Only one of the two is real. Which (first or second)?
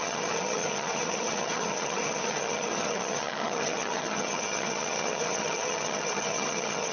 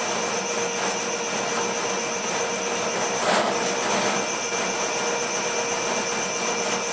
second